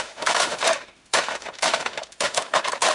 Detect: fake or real fake